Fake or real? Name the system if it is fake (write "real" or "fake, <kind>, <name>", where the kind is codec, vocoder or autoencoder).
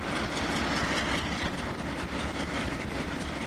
real